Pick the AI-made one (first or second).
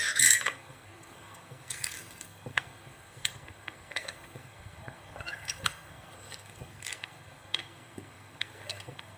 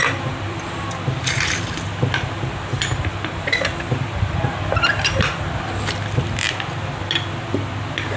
first